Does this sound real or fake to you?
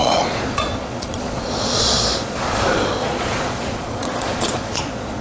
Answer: fake